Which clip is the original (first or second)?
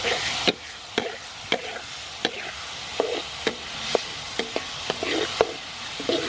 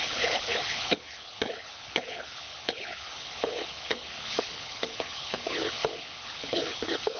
first